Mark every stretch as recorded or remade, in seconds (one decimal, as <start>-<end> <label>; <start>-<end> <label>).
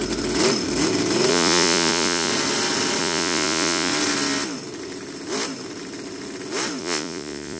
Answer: 0.0-1.3 recorded; 1.3-2.3 remade; 2.3-3.0 recorded; 3.0-3.9 remade; 3.9-6.8 recorded; 6.8-7.6 remade